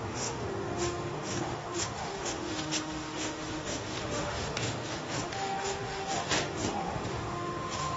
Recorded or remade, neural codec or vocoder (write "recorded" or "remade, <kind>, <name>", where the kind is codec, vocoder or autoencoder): remade, autoencoder, DAC-VAE